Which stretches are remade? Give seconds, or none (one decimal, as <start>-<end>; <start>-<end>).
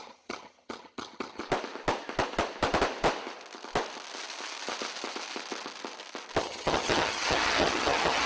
0.0-1.4; 6.4-8.3